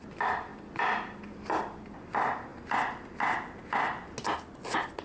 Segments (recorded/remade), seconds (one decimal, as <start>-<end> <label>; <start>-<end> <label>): 0.0-5.0 recorded